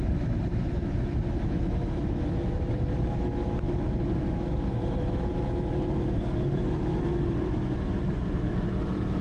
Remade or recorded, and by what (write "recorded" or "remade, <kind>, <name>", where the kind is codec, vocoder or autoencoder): remade, autoencoder, DAC-VAE